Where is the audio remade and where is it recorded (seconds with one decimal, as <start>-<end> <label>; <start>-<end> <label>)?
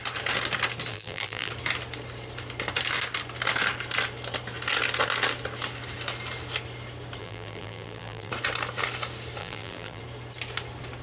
0.0-0.9 recorded; 0.9-1.5 remade; 1.5-7.2 recorded; 7.2-8.3 remade; 8.3-9.4 recorded; 9.4-10.0 remade; 10.0-11.0 recorded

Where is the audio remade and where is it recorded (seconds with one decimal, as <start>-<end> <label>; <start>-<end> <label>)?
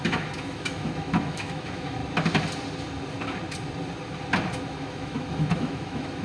0.0-2.0 remade; 2.0-4.6 recorded; 4.6-6.2 remade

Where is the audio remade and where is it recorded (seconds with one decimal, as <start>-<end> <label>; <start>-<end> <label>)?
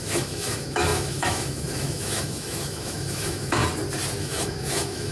0.0-3.6 remade; 3.6-4.2 recorded; 4.2-5.1 remade